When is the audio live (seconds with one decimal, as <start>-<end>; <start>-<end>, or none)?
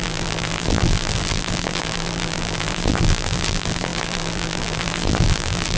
none